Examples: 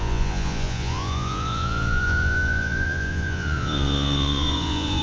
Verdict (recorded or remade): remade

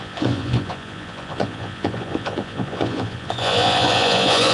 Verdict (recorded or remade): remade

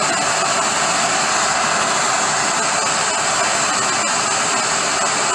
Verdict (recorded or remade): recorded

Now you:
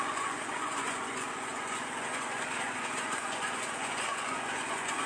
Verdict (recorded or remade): remade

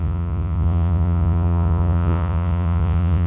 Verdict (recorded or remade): remade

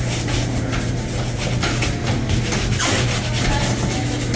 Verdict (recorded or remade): recorded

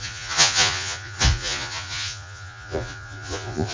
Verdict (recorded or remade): remade